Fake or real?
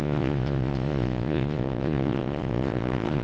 fake